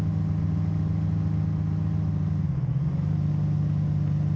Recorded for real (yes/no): yes